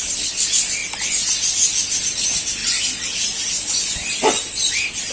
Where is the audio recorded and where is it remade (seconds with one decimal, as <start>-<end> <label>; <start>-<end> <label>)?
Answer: 0.0-5.1 recorded

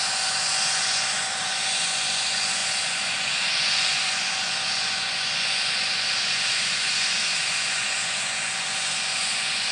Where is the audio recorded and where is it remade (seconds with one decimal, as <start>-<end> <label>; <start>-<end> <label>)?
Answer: 0.0-9.7 remade

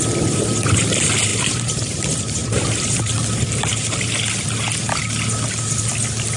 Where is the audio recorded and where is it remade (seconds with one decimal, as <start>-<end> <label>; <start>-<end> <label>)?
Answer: 0.0-1.3 recorded; 1.3-2.0 remade; 2.0-6.4 recorded

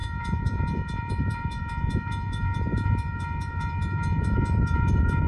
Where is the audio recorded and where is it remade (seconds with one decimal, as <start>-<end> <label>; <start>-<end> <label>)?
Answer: 0.0-5.3 remade

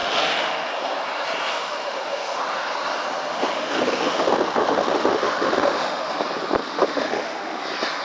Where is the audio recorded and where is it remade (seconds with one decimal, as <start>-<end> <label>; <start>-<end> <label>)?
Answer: 0.0-0.7 remade; 0.7-1.5 recorded; 1.5-2.4 remade; 2.4-3.3 recorded; 3.3-6.1 remade; 6.1-6.6 recorded; 6.6-7.6 remade; 7.6-8.0 recorded